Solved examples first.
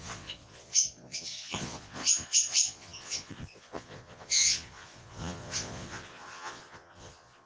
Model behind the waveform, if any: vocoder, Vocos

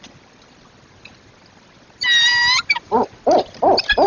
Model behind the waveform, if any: none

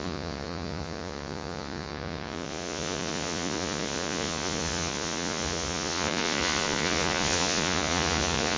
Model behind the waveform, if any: vocoder, Vocos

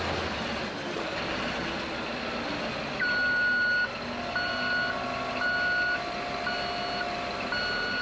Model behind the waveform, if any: none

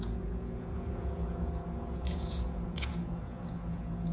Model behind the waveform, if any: vocoder, Vocos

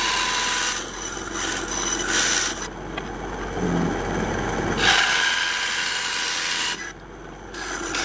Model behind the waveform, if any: none